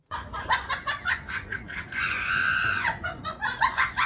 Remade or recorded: remade